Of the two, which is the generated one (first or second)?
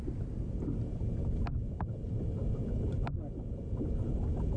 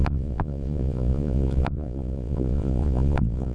second